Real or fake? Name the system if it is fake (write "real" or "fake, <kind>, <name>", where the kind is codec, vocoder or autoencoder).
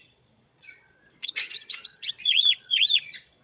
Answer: fake, vocoder, Vocos